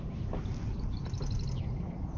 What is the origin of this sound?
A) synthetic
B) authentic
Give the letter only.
A